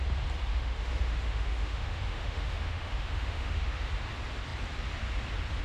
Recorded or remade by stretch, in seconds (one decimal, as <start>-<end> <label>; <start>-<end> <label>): 0.0-0.5 recorded; 0.5-3.9 remade; 3.9-5.6 recorded